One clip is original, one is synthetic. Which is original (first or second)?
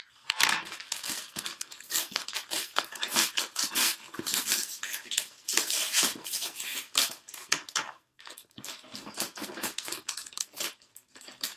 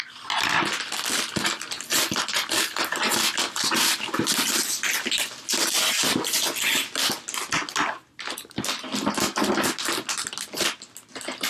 second